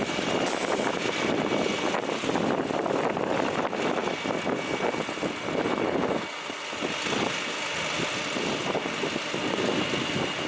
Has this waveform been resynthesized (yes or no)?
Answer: no